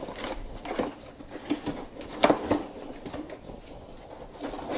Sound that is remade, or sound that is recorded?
recorded